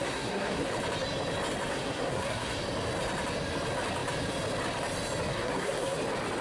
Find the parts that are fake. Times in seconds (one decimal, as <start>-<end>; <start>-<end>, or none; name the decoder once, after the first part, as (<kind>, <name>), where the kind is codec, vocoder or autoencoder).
0.0-0.7 (codec, SNAC); 1.7-2.5; 5.3-6.0